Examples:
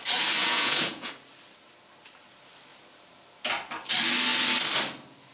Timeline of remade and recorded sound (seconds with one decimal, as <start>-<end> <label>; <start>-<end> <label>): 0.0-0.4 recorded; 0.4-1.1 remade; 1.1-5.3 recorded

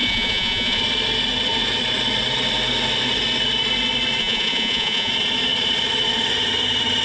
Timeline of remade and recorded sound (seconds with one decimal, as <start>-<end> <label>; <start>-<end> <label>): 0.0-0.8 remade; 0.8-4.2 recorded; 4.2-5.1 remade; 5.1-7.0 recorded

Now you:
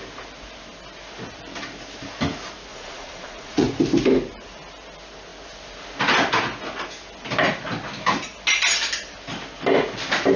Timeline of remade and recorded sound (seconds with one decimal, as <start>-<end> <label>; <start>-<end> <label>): 0.0-2.7 recorded; 2.7-3.8 remade; 3.8-10.4 recorded